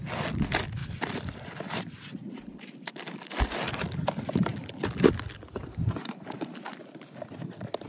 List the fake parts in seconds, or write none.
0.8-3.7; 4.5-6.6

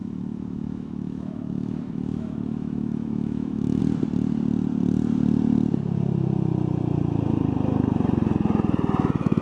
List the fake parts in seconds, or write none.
0.0-3.8

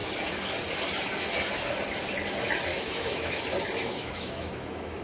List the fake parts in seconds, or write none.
2.7-3.4; 3.8-5.0

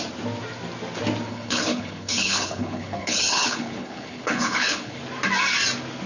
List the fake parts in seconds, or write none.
1.3-5.0

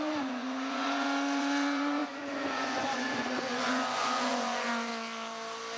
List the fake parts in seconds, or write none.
0.0-4.9

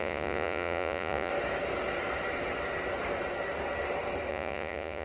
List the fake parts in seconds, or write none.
0.0-1.3; 4.3-5.0